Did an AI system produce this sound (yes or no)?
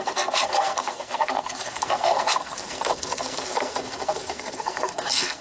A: yes